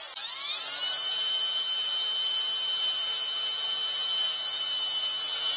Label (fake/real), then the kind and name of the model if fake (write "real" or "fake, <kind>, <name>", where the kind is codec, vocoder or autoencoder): real